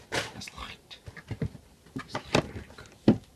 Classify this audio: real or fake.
real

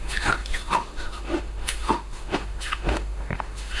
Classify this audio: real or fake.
fake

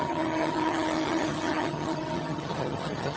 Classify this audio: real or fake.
fake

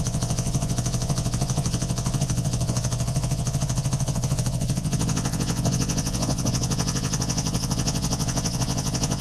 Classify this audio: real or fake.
fake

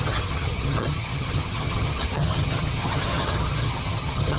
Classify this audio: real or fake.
fake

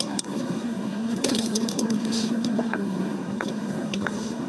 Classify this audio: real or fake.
fake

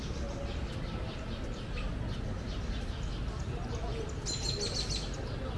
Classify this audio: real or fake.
real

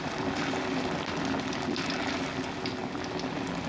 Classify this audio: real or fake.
real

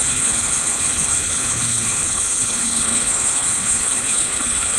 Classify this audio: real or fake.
fake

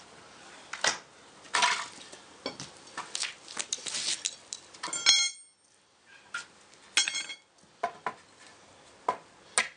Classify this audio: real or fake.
real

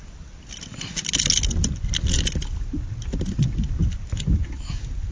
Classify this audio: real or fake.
real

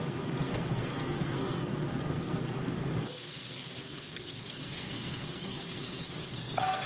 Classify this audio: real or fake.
fake